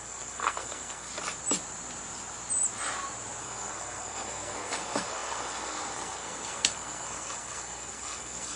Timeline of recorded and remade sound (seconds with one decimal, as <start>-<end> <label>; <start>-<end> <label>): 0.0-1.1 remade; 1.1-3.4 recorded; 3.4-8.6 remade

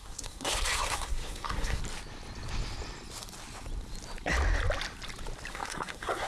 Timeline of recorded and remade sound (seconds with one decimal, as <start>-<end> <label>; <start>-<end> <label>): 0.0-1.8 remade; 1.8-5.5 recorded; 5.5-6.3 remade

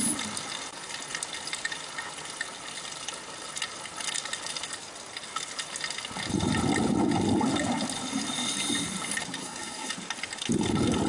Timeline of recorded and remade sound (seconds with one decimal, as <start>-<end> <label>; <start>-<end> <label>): 0.0-9.4 recorded; 9.4-9.9 remade; 9.9-11.1 recorded